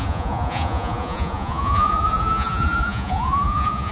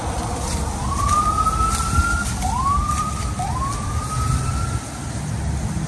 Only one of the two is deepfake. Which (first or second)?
first